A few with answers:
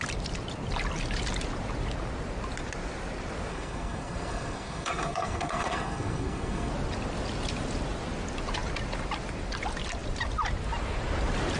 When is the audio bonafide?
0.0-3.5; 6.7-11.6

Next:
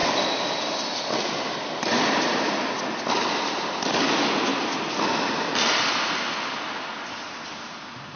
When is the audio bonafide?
0.0-8.2

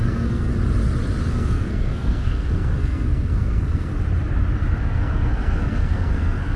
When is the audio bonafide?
0.5-1.3; 3.9-4.8

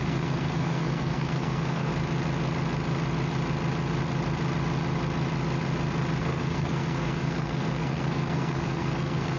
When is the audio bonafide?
1.9-6.2